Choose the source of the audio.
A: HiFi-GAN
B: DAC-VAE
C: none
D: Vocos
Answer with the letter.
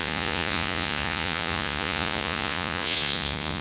D